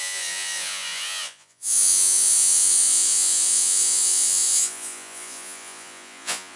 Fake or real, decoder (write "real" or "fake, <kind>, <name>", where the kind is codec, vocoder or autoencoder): fake, vocoder, Vocos